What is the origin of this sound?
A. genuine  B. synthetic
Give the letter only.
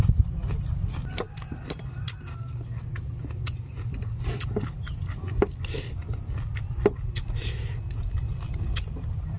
A